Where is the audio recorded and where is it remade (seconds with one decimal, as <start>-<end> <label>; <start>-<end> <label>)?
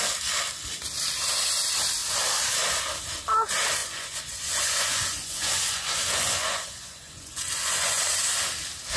0.0-3.8 recorded; 3.8-8.0 remade; 8.0-9.0 recorded